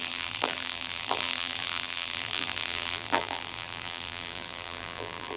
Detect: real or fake fake